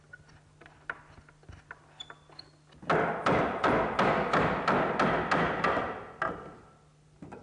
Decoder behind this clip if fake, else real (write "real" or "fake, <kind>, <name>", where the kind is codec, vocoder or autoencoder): real